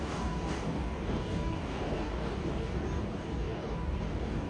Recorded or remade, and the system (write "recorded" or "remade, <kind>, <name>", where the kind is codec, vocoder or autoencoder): remade, codec, DAC